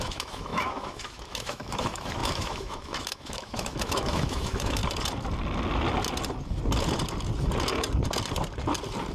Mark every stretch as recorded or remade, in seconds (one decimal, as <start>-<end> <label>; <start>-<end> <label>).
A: 0.0-4.8 remade; 4.8-9.1 recorded